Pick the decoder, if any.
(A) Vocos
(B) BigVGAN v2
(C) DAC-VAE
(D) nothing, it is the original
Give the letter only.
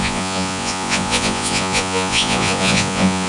A